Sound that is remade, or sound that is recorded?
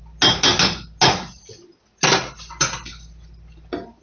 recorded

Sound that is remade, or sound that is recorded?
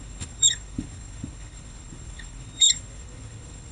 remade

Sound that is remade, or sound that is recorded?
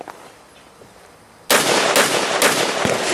recorded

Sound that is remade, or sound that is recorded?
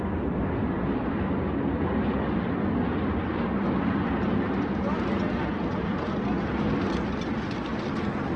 recorded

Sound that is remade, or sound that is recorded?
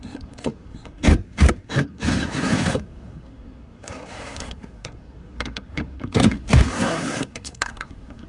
remade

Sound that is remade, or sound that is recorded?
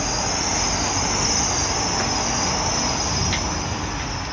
recorded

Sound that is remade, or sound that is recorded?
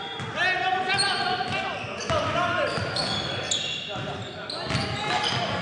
recorded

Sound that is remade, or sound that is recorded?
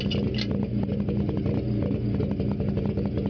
recorded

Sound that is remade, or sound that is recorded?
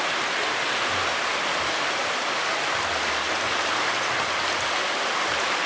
recorded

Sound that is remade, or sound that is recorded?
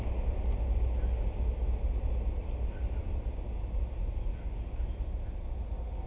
recorded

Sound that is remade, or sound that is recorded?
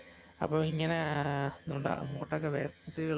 remade